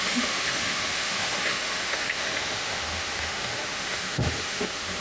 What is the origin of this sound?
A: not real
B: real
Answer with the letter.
A